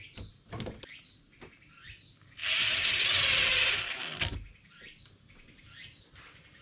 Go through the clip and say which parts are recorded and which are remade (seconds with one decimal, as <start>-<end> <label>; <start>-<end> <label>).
0.0-6.6 recorded